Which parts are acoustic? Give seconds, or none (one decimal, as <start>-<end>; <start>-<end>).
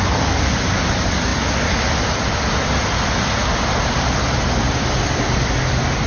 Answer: 0.0-6.1